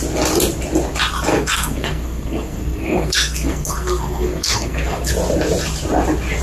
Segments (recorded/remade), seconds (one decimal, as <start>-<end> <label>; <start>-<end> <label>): 0.0-1.3 recorded; 1.3-5.1 remade; 5.1-6.4 recorded